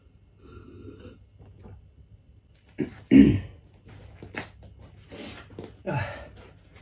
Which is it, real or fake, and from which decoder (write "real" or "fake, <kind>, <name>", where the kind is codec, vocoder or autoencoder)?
real